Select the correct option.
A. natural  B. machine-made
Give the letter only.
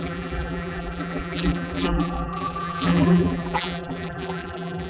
B